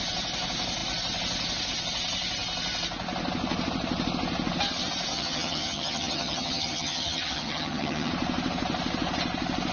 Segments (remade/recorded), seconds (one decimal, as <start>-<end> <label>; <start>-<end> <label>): 0.0-5.1 recorded; 5.1-8.1 remade; 8.1-9.7 recorded